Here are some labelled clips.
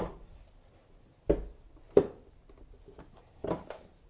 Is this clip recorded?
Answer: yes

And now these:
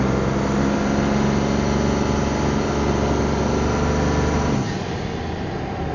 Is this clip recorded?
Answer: yes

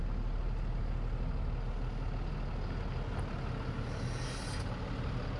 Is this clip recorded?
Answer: yes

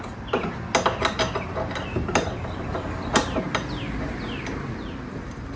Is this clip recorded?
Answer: yes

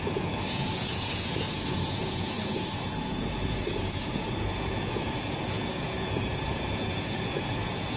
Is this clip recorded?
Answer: no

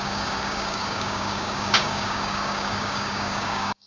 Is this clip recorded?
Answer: no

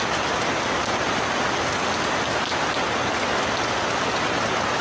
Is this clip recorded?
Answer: yes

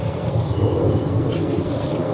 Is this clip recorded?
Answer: no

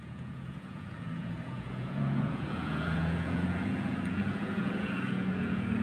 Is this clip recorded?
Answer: no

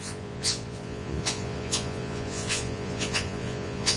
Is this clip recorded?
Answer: no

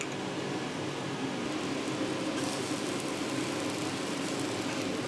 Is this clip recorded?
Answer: yes